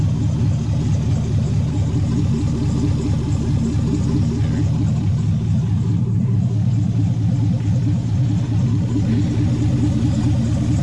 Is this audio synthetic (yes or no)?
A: no